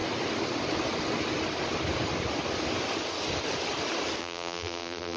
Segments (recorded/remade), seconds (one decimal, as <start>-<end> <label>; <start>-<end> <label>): 0.0-4.2 recorded; 4.2-5.2 remade